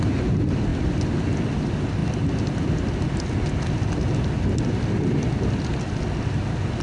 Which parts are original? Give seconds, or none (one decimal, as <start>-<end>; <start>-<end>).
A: 2.0-4.9